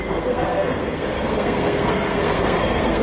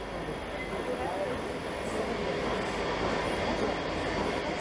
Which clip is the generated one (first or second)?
first